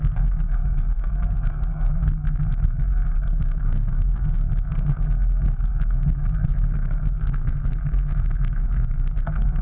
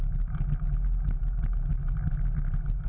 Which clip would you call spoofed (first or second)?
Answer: first